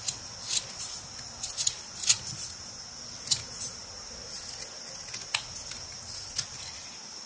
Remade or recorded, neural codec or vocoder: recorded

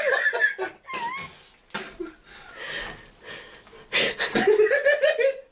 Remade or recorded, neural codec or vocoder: recorded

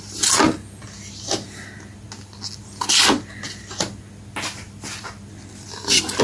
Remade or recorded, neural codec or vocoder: recorded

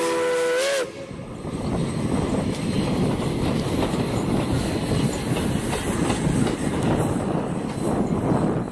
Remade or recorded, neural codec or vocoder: recorded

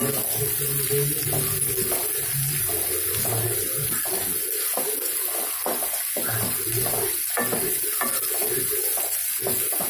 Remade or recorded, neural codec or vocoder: recorded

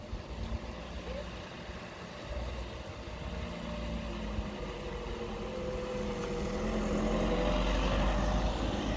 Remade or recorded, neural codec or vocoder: recorded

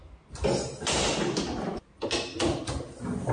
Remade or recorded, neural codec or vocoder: recorded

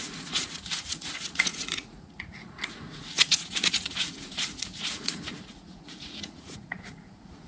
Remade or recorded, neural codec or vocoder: remade, vocoder, Vocos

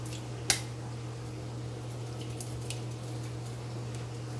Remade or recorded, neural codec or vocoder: recorded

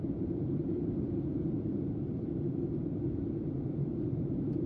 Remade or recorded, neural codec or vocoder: remade, vocoder, BigVGAN v2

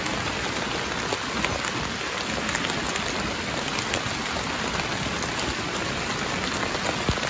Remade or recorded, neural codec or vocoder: recorded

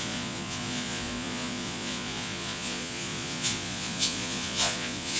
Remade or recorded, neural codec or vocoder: remade, vocoder, Vocos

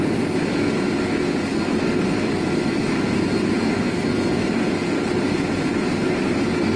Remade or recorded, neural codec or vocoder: recorded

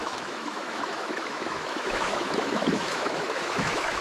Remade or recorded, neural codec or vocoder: remade, autoencoder, DAC-VAE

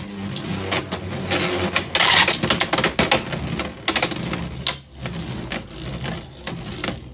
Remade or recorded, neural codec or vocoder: recorded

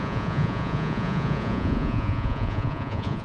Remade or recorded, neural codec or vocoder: remade, vocoder, Vocos